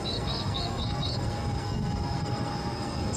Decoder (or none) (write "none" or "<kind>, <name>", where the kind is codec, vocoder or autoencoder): codec, SNAC